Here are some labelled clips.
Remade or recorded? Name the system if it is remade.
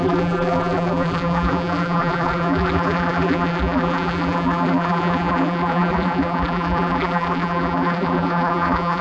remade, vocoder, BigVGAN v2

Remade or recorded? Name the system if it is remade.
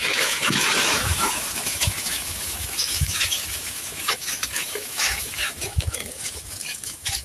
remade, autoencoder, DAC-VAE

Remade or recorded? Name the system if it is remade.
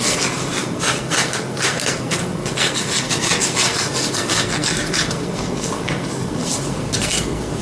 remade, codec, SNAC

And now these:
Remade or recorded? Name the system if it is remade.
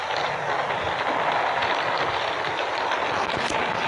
recorded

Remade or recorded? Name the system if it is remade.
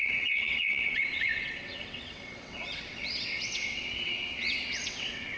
remade, vocoder, WaveNeXt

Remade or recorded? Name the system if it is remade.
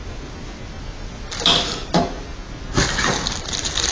recorded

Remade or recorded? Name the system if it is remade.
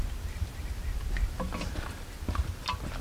recorded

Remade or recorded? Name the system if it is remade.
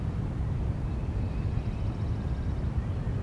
remade, vocoder, BigVGAN v2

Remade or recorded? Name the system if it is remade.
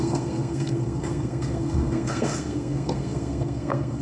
remade, codec, SNAC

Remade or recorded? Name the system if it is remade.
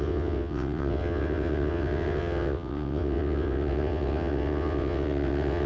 remade, vocoder, WaveNeXt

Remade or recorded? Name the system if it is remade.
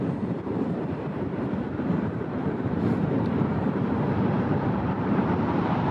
remade, vocoder, BigVGAN v2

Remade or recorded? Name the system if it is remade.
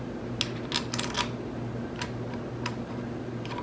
recorded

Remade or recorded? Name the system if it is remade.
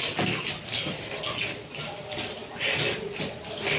recorded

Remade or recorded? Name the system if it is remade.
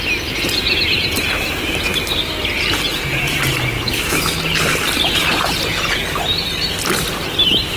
recorded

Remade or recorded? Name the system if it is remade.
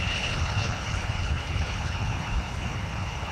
remade, codec, HILCodec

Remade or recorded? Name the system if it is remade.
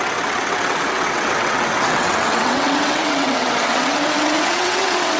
remade, vocoder, WaveNeXt